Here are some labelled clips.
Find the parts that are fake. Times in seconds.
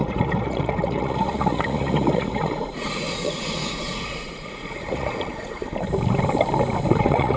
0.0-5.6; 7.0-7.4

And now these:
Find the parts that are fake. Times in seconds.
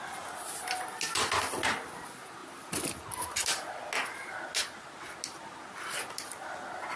none